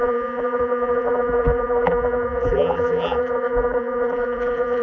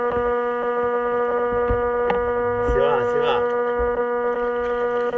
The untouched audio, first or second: second